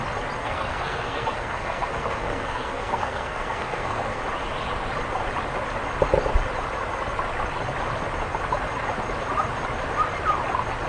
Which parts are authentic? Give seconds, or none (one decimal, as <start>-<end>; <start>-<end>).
0.0-0.4; 4.2-10.9